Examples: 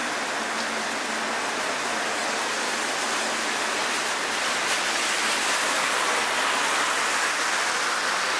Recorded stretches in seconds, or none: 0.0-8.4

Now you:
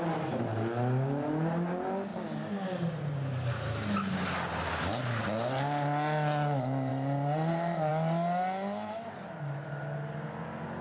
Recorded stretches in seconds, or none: 0.0-10.8

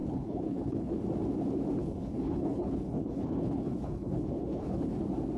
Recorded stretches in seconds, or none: 1.0-1.8; 5.0-5.4

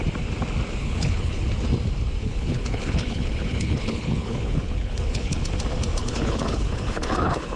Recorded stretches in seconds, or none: 0.0-0.8; 1.5-2.2; 5.4-6.0

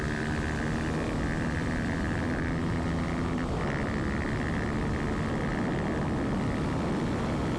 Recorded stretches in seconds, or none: 0.0-7.6

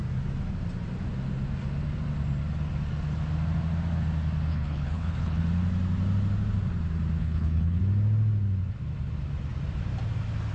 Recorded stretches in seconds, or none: 0.0-4.5; 5.4-7.2; 7.8-10.5